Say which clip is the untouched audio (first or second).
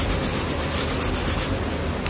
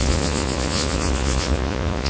first